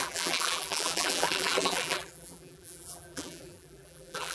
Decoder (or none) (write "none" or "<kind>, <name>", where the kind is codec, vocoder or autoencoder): vocoder, BigVGAN v2